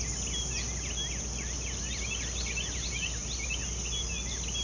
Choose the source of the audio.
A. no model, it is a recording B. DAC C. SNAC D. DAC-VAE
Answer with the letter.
A